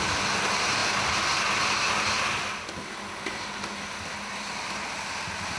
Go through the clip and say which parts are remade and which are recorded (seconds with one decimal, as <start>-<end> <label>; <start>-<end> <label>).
0.0-5.6 recorded